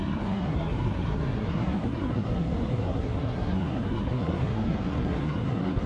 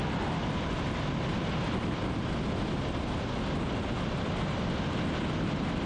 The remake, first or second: first